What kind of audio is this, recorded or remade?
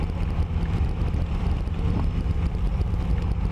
remade